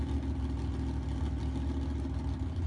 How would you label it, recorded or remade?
recorded